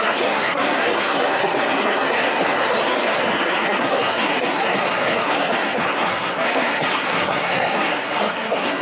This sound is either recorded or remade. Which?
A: remade